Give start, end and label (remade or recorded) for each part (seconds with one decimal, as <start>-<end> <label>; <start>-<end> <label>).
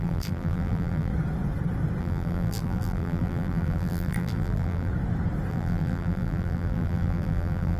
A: 0.0-1.1 remade; 1.1-2.0 recorded; 2.0-4.9 remade; 4.9-5.5 recorded; 5.5-7.8 remade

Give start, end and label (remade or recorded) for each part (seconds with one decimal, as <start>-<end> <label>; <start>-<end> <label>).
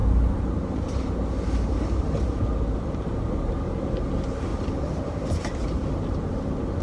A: 0.0-6.8 recorded